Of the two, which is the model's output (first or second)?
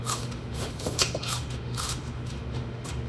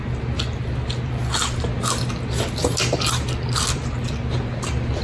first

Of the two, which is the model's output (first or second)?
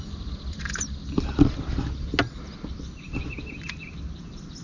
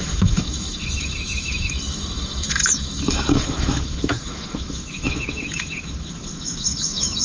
second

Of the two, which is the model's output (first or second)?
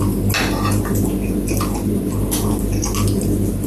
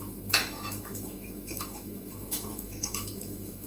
second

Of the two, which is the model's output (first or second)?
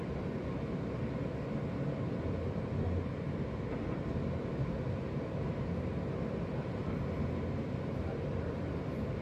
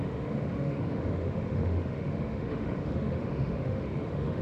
second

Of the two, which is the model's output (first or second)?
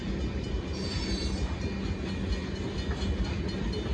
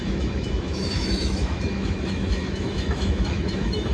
second